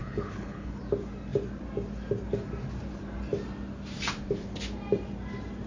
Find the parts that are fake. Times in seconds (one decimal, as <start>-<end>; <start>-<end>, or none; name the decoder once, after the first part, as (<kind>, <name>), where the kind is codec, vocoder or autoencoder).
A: 0.0-0.8 (codec, HILCodec)